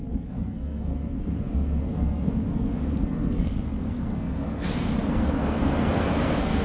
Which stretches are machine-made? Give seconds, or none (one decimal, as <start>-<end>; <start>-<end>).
0.0-6.6